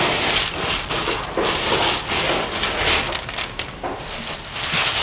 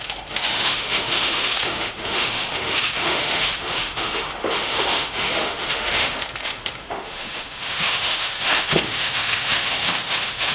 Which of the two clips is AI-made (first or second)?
second